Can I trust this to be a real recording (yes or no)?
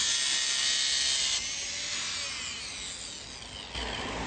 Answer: yes